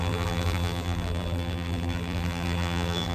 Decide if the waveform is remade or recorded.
remade